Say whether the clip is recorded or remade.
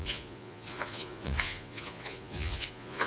remade